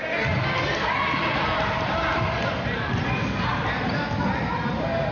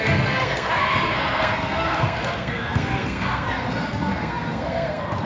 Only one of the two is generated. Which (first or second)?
second